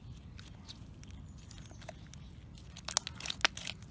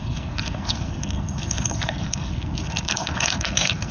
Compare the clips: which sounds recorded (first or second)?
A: first